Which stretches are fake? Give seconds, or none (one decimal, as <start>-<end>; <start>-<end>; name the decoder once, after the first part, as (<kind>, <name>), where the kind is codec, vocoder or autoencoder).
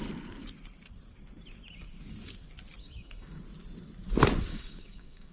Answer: 2.8-3.4 (codec, DAC); 4.5-5.3